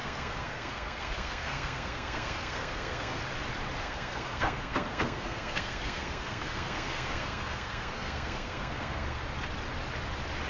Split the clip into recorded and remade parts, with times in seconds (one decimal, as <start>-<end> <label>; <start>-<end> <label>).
0.0-3.2 remade; 3.2-3.8 recorded; 3.8-9.2 remade; 9.2-10.5 recorded